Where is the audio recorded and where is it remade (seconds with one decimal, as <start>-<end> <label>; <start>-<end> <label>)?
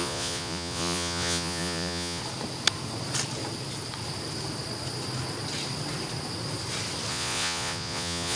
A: 0.0-2.2 remade; 2.2-7.1 recorded; 7.1-8.4 remade